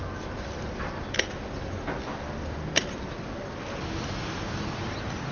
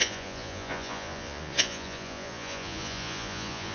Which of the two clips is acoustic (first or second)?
first